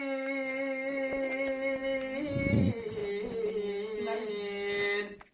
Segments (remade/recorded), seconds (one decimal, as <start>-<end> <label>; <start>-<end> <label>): 0.0-5.3 recorded